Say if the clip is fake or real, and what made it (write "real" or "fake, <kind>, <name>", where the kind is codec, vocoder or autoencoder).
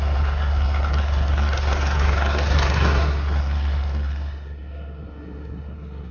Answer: fake, codec, SNAC